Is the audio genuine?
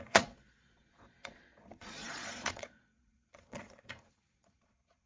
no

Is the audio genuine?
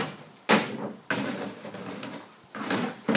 yes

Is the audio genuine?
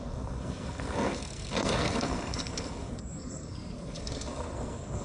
no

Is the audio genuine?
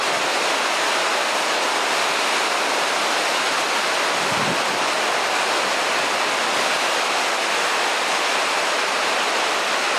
yes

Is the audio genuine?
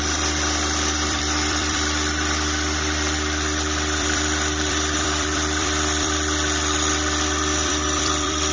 no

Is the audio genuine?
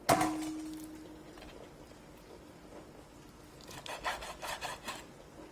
yes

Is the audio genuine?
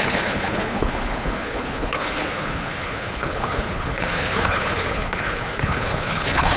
no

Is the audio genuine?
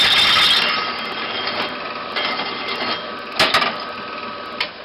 yes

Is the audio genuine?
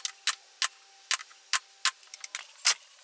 yes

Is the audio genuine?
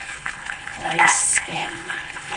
no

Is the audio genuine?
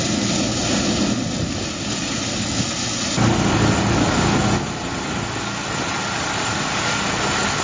yes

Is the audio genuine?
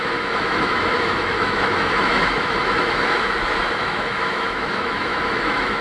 no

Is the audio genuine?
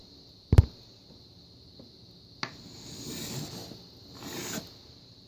yes